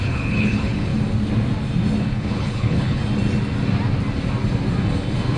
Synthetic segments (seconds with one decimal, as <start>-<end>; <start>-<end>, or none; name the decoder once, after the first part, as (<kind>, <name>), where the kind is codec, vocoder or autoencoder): 0.0-0.9 (codec, HILCodec); 2.0-3.0